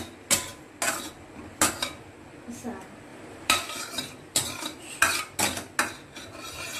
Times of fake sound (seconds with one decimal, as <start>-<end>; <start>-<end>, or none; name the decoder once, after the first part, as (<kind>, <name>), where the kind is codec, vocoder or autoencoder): 3.1-5.4 (vocoder, BigVGAN v2)